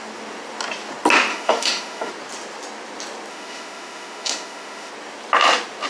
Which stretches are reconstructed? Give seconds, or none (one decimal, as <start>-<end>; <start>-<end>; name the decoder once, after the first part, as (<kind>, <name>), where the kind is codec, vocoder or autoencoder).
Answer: 1.3-2.1 (autoencoder, DAC-VAE); 3.3-4.9